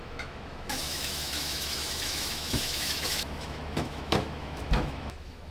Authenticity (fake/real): fake